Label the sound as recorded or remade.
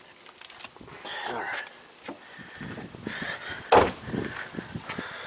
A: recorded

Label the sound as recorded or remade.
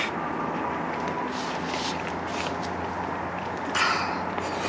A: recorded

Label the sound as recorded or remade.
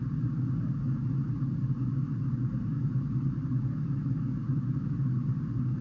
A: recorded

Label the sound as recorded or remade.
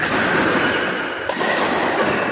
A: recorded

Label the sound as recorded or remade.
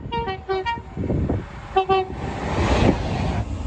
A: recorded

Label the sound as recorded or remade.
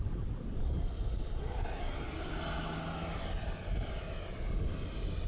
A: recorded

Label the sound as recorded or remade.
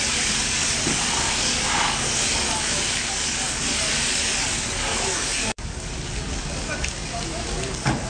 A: remade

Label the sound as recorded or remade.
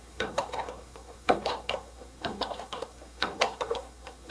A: remade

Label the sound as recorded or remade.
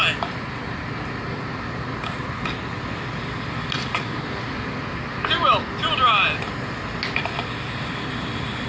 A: recorded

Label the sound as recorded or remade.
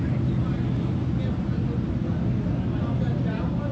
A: recorded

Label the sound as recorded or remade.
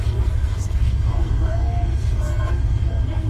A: remade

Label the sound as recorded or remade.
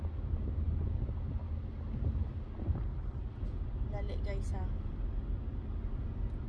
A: recorded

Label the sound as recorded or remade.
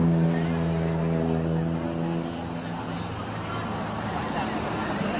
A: recorded